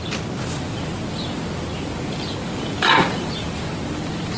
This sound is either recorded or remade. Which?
recorded